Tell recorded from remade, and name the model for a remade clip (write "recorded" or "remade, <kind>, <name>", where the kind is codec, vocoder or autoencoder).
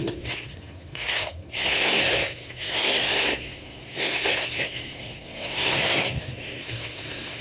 remade, codec, SNAC